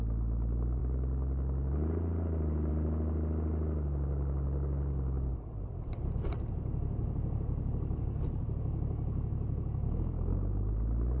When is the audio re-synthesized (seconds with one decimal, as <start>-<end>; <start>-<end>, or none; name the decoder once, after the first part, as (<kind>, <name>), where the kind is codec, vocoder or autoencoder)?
5.3-8.4 (vocoder, BigVGAN v2)